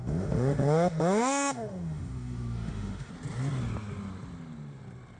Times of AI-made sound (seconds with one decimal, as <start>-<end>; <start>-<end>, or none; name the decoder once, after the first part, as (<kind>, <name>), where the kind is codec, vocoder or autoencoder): 0.0-3.1 (autoencoder, DAC-VAE)